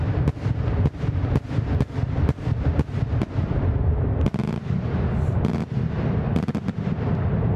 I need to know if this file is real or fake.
real